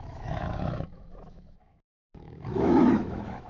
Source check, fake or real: fake